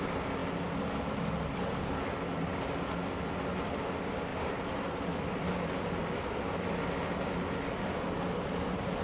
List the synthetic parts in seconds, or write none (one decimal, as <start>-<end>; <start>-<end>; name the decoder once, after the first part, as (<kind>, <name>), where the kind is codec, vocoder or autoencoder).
4.3-4.8 (vocoder, BigVGAN v2)